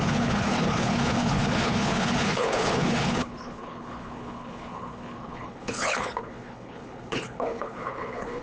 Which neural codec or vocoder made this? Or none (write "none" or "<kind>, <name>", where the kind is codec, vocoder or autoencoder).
codec, HILCodec